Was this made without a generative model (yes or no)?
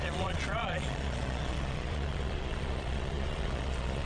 no